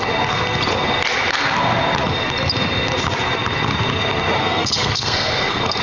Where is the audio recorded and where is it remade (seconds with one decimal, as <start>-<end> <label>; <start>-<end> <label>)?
0.0-4.4 recorded; 4.4-5.8 remade

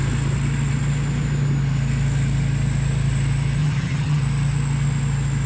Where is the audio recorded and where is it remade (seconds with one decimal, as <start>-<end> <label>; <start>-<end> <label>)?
0.0-3.6 recorded; 3.6-4.2 remade; 4.2-5.5 recorded

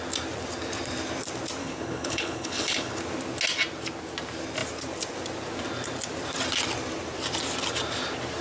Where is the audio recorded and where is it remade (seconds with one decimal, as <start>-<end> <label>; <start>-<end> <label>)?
0.0-1.6 recorded; 1.6-3.0 remade; 3.0-8.4 recorded

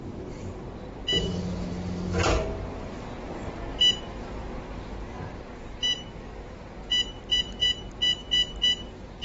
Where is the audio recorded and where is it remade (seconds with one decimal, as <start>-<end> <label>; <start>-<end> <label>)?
0.0-9.2 recorded

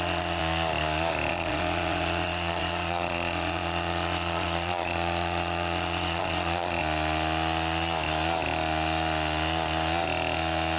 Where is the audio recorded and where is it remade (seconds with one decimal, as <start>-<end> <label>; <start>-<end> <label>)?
0.0-0.4 remade; 0.4-1.3 recorded; 1.3-6.8 remade; 6.8-10.8 recorded

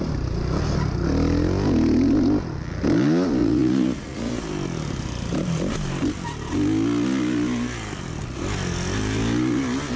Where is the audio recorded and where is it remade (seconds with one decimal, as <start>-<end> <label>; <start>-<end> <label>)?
0.0-3.4 recorded; 3.4-4.3 remade; 4.3-10.0 recorded

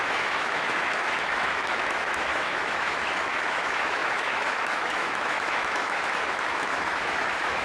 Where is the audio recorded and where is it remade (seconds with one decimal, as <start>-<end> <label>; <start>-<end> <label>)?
0.0-7.6 remade

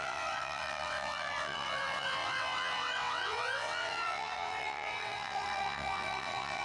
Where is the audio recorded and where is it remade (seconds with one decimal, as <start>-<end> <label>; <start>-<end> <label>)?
0.0-6.6 remade